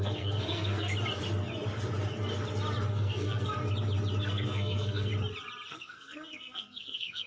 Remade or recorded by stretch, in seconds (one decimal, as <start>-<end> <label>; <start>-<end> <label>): 0.0-0.9 remade; 0.9-2.9 recorded; 2.9-3.6 remade; 3.6-4.2 recorded; 4.2-5.1 remade; 5.1-5.7 recorded; 5.7-7.3 remade